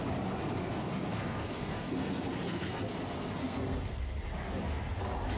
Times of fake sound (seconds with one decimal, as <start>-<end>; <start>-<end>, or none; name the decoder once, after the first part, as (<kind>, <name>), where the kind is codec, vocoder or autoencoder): 0.6-2.8 (codec, SNAC); 3.4-4.2